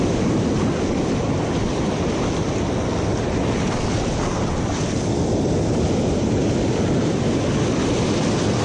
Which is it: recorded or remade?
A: recorded